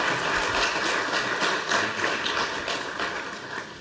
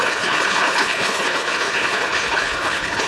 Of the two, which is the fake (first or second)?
second